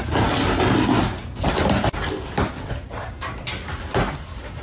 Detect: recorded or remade recorded